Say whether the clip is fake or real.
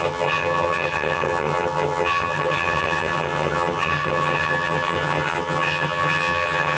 fake